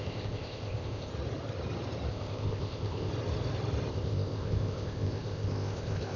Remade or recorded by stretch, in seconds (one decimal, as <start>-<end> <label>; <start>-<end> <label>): 0.0-1.1 remade; 1.1-2.1 recorded; 2.1-3.1 remade; 3.1-3.9 recorded; 3.9-6.2 remade